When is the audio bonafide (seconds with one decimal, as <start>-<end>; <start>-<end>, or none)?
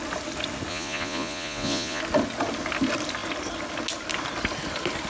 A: 0.0-0.7; 2.0-5.1